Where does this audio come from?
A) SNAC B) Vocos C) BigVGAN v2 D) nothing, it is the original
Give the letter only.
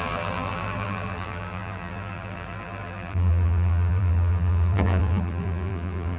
C